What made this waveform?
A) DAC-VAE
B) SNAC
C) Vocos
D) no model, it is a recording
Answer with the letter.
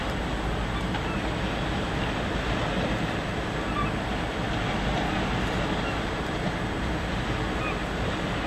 D